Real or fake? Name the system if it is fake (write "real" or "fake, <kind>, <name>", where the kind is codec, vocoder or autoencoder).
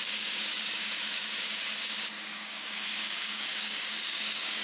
fake, codec, DAC